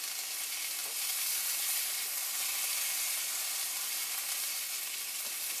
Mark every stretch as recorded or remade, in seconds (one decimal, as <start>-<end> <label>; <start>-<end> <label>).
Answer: 0.0-5.6 recorded